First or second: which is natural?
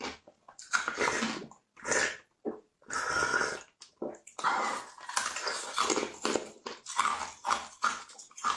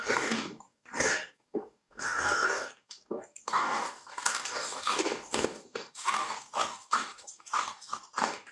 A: first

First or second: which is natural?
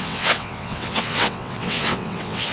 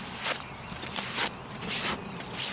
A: second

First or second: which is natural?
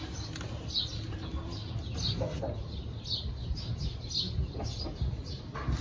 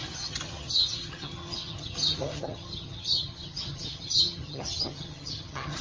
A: first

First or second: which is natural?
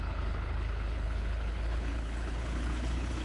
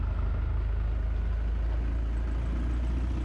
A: second